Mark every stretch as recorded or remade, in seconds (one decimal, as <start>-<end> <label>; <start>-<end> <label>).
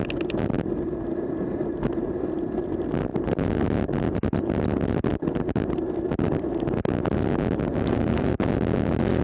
0.0-7.7 recorded; 7.7-8.3 remade; 8.3-9.2 recorded